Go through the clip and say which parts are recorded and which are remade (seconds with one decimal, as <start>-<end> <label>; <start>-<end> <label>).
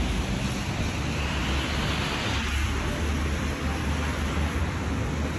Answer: 0.0-5.4 recorded